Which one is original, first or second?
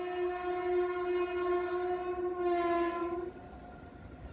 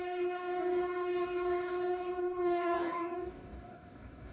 first